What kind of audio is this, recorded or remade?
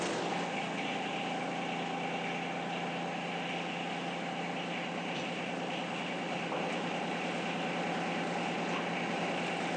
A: recorded